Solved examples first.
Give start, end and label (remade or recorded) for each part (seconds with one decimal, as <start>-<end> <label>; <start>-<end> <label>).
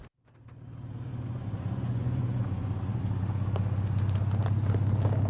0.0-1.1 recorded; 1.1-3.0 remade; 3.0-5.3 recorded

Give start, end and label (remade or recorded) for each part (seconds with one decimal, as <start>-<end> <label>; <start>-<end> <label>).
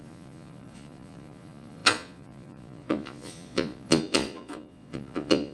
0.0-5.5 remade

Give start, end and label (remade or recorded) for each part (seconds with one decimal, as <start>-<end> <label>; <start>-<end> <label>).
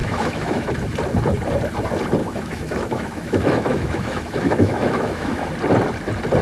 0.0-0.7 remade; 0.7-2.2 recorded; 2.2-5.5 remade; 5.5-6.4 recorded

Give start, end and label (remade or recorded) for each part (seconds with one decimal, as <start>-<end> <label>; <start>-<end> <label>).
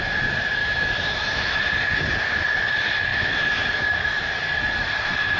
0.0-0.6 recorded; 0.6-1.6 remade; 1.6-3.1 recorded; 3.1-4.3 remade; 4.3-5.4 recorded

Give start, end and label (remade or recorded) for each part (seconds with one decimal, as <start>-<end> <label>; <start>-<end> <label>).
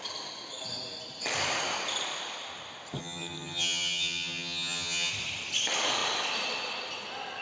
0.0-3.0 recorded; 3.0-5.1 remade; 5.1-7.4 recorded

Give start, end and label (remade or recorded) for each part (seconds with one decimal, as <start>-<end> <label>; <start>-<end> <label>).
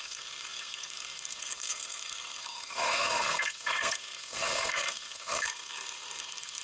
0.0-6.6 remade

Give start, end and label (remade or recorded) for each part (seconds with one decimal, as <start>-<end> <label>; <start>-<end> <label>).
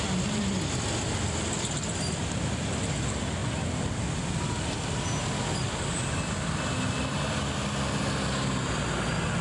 0.0-9.4 recorded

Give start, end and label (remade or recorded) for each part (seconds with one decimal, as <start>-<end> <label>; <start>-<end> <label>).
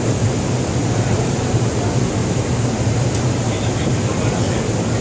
0.0-0.8 recorded; 0.8-1.7 remade; 1.7-2.2 recorded; 2.2-4.3 remade; 4.3-5.0 recorded